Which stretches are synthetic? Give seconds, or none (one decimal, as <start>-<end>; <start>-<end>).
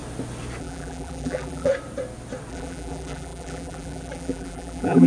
0.6-1.7; 2.5-5.1